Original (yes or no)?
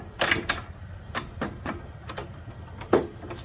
no